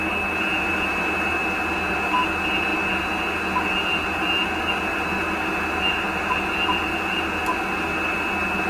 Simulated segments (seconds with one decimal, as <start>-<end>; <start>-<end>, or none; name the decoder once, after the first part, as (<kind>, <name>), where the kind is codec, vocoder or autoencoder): none